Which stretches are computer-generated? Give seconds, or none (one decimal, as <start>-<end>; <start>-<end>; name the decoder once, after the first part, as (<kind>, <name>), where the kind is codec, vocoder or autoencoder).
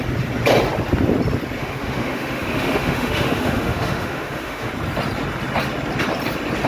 1.6-4.7 (autoencoder, DAC-VAE)